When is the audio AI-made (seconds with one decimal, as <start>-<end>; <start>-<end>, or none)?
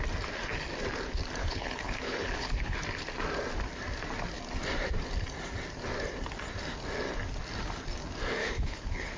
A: 1.4-2.8; 8.4-9.2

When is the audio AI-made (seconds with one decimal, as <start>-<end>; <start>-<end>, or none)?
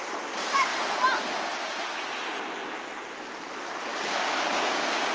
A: 3.9-5.1